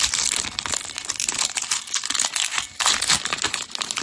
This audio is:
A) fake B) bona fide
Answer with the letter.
B